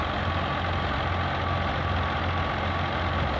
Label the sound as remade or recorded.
recorded